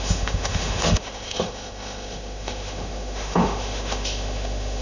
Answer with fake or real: fake